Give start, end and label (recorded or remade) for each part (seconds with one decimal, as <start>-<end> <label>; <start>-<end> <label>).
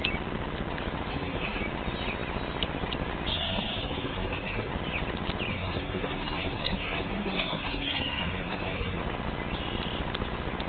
0.0-1.1 recorded; 1.1-1.6 remade; 1.6-3.3 recorded; 3.3-4.7 remade; 4.7-5.5 recorded; 5.5-9.0 remade; 9.0-10.7 recorded